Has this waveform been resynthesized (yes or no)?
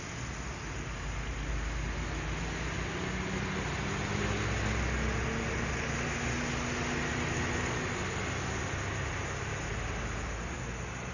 no